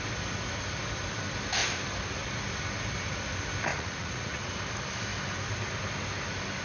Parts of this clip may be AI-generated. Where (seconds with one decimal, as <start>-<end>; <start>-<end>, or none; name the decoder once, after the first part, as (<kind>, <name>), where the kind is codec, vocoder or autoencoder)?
3.7-4.5 (vocoder, Vocos)